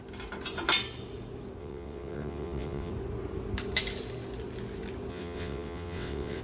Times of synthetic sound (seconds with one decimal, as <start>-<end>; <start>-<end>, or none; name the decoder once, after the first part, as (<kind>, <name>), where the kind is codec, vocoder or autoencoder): 1.6-2.9 (vocoder, WaveNeXt); 5.1-6.4

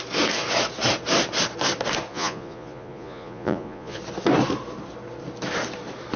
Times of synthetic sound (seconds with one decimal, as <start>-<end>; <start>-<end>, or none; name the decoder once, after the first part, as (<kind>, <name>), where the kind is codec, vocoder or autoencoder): 2.1-4.0 (vocoder, Vocos)

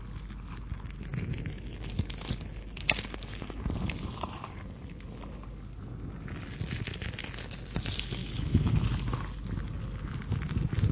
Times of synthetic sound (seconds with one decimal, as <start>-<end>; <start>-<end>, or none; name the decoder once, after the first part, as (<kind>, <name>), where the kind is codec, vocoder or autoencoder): 8.2-8.9 (autoencoder, DAC-VAE)

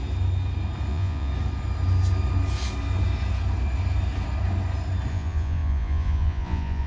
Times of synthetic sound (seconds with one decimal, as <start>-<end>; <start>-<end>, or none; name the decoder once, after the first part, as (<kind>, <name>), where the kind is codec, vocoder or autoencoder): 0.9-1.3 (vocoder, Vocos); 5.1-6.9

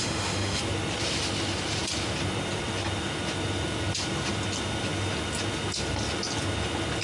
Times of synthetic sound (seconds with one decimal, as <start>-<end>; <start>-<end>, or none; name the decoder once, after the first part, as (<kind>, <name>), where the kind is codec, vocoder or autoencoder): 0.0-0.6 (autoencoder, DAC-VAE)

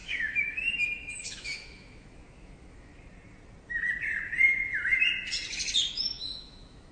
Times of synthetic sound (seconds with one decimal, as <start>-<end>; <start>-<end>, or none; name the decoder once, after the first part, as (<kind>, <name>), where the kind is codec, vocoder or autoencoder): 0.0-2.9 (autoencoder, DAC-VAE); 5.9-6.9